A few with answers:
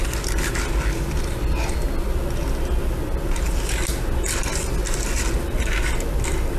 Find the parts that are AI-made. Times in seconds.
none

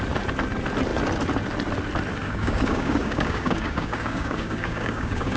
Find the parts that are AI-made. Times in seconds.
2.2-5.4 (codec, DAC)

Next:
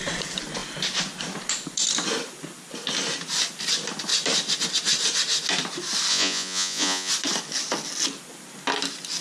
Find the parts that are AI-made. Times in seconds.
6.1-7.1 (vocoder, Vocos)

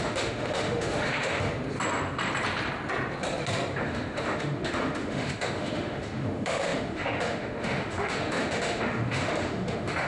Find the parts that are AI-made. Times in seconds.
0.0-1.5 (autoencoder, DAC-VAE); 3.8-10.1

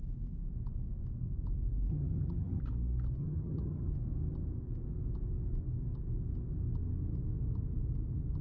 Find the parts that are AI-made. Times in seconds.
1.9-2.6 (vocoder, HiFi-GAN); 3.2-3.9